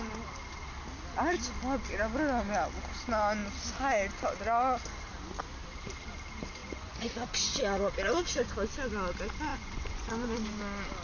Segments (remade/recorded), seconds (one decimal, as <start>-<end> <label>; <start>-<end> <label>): 0.0-6.6 recorded; 6.6-8.7 remade; 8.7-9.5 recorded; 9.5-10.6 remade; 10.6-11.0 recorded